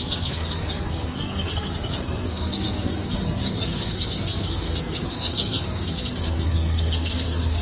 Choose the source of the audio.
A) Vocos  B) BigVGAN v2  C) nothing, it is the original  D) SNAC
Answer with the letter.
D